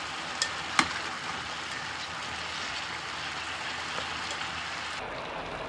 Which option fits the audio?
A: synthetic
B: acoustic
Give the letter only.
B